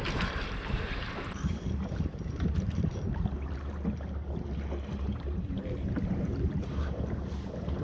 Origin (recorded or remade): remade